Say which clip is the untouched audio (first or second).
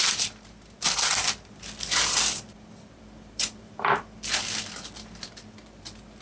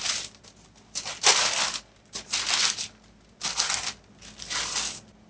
second